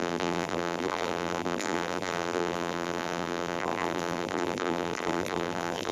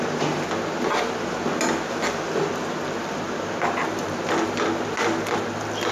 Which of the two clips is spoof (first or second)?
first